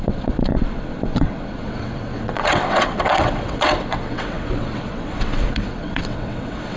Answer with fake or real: fake